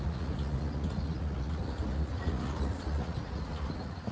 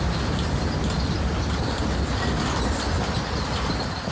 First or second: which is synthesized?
first